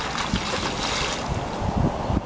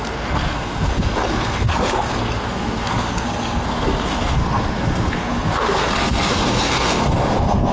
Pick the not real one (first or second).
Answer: second